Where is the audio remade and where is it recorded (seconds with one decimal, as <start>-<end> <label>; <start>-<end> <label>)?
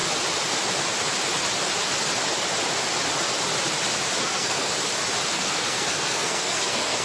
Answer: 0.0-4.2 recorded; 4.2-4.7 remade; 4.7-5.3 recorded; 5.3-7.0 remade